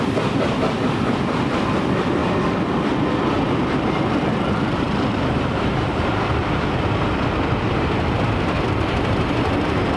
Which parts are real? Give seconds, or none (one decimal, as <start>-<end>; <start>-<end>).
2.2-3.5